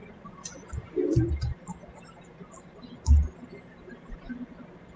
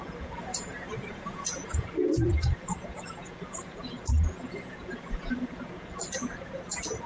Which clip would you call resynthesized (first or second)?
second